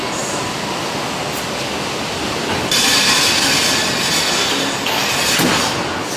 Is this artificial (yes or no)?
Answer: no